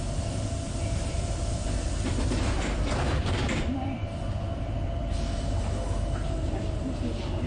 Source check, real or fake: fake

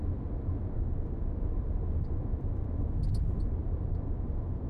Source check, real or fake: real